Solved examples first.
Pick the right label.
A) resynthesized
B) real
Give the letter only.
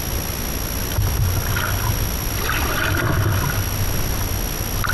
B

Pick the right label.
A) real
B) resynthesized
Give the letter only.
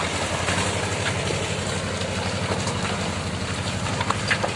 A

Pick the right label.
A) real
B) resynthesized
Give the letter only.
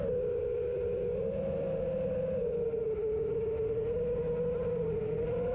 A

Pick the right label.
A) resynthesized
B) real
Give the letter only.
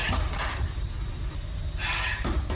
B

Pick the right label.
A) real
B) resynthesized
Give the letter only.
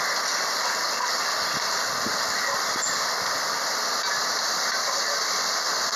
A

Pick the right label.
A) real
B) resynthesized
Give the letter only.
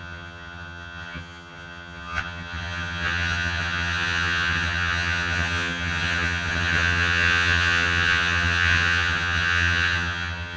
B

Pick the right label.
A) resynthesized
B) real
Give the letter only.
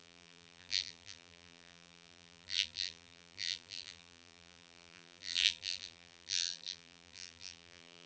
A